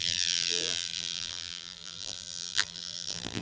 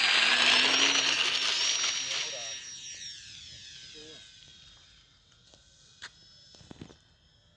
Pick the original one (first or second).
second